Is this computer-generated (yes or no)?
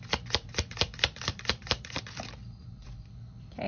yes